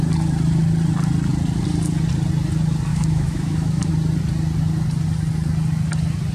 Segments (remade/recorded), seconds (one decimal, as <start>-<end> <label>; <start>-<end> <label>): 0.0-2.9 recorded; 2.9-3.9 remade; 3.9-6.3 recorded